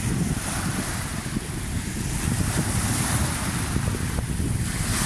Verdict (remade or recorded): recorded